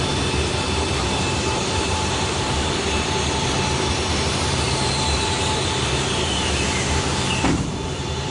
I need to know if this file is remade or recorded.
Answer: remade